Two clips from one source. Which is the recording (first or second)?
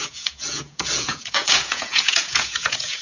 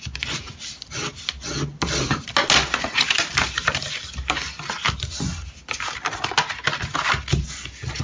second